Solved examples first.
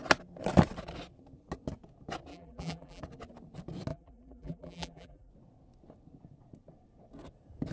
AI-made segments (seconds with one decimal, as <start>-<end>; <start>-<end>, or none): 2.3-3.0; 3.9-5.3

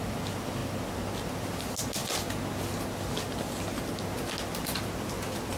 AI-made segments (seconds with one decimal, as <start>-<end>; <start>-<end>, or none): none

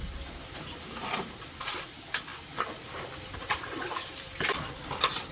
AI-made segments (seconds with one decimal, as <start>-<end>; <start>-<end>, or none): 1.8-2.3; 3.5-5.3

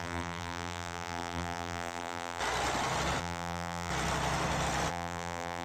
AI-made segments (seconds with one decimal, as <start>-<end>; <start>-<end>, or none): 0.0-2.4; 3.2-3.9; 4.9-5.6

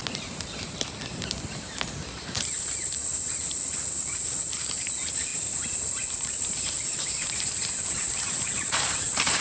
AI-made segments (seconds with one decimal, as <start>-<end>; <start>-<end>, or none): 2.1-9.4

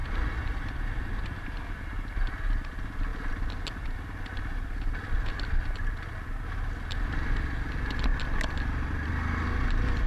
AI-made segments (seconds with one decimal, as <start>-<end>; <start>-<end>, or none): 0.0-1.4